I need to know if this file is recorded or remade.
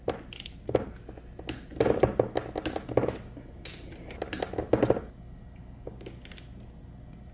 recorded